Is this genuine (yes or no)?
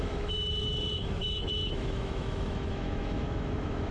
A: no